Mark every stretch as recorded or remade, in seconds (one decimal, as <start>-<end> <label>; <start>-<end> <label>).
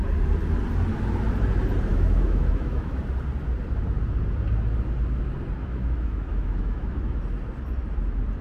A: 0.0-1.9 recorded; 1.9-3.0 remade; 3.0-5.6 recorded; 5.6-7.2 remade; 7.2-8.4 recorded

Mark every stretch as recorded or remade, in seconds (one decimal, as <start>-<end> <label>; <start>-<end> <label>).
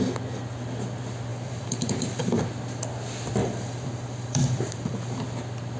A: 0.0-1.3 recorded; 1.3-2.4 remade; 2.4-3.4 recorded; 3.4-5.1 remade; 5.1-5.8 recorded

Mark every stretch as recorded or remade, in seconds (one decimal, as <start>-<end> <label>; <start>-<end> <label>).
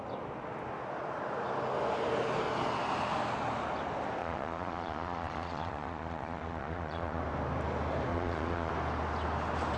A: 0.0-4.2 recorded; 4.2-7.2 remade; 7.2-8.1 recorded; 8.1-8.7 remade; 8.7-9.8 recorded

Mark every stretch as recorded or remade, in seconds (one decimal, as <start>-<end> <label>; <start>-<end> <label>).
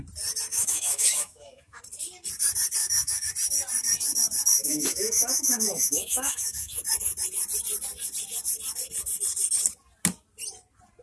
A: 0.0-0.5 recorded; 0.5-1.8 remade; 1.8-2.8 recorded; 2.8-3.3 remade; 3.3-4.6 recorded; 4.6-6.8 remade; 6.8-11.0 recorded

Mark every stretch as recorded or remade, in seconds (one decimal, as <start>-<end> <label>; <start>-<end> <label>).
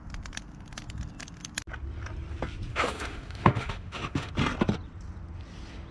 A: 0.0-2.7 recorded; 2.7-4.3 remade; 4.3-5.9 recorded